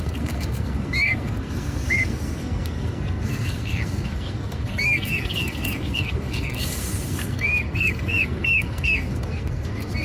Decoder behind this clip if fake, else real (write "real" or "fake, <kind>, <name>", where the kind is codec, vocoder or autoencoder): fake, codec, SNAC